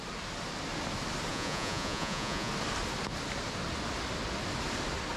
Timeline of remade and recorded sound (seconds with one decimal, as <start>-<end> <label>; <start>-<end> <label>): 0.0-1.3 recorded; 1.3-2.5 remade; 2.5-5.2 recorded